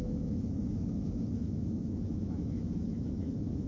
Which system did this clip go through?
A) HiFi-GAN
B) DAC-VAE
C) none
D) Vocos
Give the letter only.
B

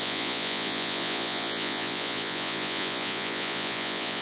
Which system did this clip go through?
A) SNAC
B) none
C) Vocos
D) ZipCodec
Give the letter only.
C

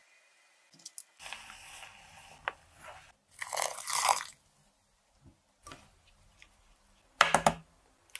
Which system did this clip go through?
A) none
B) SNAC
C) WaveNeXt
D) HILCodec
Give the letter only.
A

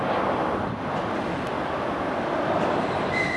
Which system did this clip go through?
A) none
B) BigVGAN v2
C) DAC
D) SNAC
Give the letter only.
A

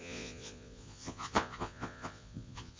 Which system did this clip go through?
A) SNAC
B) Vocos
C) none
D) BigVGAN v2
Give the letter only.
B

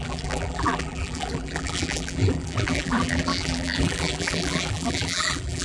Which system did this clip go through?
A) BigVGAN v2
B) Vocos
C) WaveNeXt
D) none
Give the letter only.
A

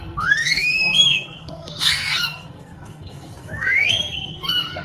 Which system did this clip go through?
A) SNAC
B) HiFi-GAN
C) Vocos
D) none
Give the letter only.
A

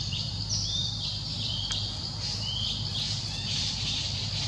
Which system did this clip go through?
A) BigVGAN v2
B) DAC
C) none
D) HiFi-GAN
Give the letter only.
C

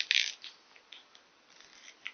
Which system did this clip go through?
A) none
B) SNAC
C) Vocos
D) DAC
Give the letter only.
A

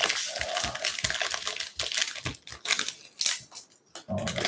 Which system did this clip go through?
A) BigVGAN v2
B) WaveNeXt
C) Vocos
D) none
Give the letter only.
D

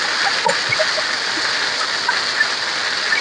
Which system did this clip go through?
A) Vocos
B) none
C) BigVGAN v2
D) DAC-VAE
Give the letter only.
B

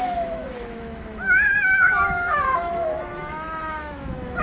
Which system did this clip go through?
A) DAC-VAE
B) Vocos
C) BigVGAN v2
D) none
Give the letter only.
A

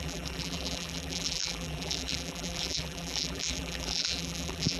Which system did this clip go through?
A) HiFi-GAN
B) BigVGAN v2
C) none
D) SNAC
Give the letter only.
B